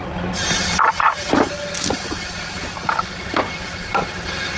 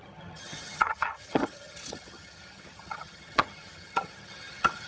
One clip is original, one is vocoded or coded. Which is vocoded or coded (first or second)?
second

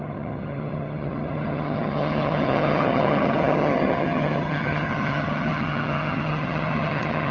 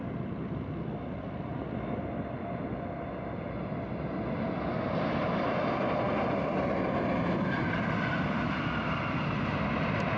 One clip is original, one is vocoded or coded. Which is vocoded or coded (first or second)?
first